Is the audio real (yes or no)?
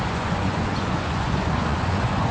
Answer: no